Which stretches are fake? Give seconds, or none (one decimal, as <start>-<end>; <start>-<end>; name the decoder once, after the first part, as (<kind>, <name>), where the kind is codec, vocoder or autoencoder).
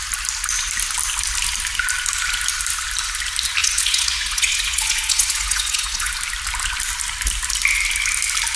3.6-6.1 (vocoder, Vocos)